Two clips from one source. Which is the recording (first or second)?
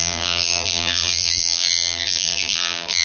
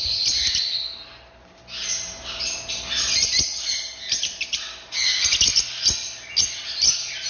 second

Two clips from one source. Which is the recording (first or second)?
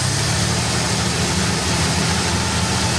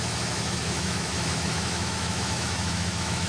first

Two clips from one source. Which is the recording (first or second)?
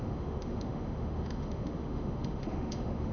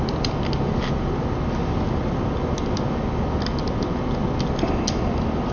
second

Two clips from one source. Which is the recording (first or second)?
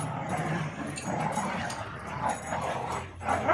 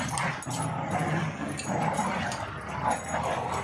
second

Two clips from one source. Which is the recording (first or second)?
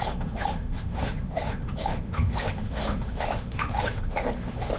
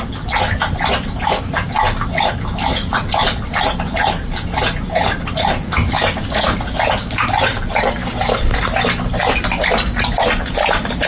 second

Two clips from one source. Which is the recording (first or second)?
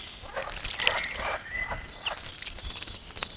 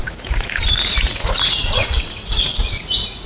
first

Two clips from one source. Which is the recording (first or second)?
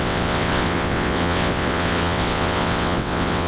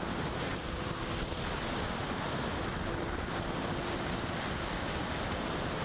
second